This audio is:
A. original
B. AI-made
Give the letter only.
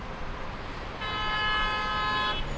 A